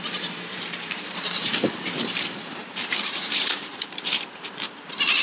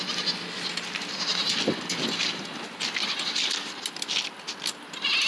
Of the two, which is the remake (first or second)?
first